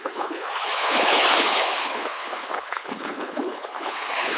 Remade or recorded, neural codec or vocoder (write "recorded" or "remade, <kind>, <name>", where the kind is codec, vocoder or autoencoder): remade, codec, HILCodec